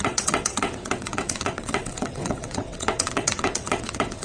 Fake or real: fake